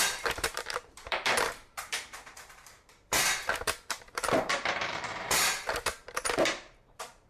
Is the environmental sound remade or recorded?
remade